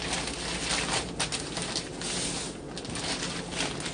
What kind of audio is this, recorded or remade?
recorded